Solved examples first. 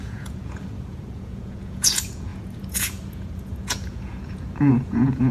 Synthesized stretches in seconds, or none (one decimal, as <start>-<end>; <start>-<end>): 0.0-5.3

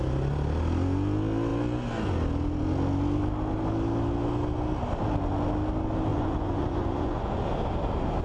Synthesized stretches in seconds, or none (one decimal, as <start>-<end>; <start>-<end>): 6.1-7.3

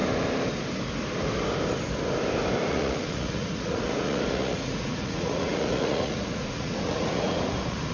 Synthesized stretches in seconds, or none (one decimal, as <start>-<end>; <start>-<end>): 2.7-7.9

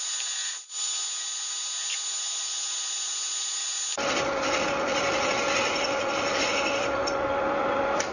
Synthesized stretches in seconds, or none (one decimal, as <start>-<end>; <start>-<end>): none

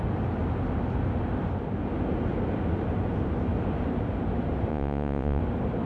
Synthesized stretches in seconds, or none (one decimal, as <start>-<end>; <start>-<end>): 4.7-5.4